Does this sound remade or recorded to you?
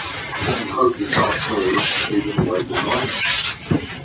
remade